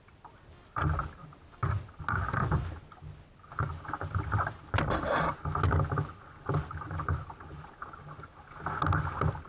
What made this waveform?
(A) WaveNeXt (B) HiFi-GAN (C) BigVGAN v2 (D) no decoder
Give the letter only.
D